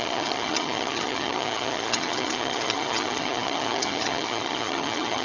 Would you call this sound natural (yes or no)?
no